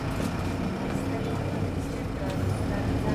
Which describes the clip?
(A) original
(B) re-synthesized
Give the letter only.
A